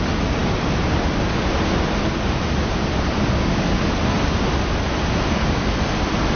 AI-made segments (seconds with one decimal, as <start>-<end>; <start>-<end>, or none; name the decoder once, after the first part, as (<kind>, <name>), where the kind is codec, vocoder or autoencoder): none